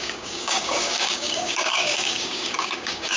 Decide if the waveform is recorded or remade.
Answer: remade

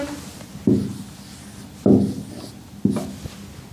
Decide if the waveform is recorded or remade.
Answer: recorded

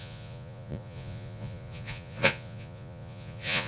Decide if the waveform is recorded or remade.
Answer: remade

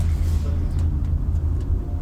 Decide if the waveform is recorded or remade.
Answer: recorded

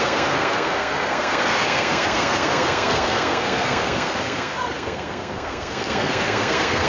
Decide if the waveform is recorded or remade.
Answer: remade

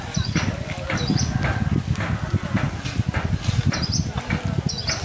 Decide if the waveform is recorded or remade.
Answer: recorded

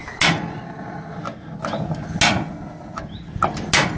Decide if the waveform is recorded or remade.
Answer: recorded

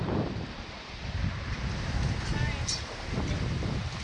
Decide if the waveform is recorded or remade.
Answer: remade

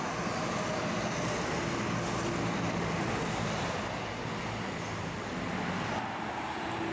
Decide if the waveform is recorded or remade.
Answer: recorded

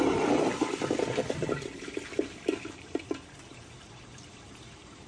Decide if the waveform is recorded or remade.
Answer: remade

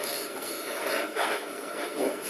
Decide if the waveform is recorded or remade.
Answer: remade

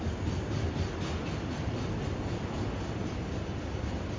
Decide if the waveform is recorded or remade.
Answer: recorded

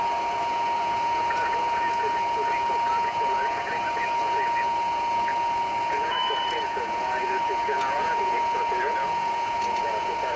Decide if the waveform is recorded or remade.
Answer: remade